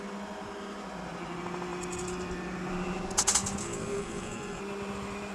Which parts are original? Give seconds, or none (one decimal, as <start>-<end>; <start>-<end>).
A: 0.0-3.6; 4.6-5.3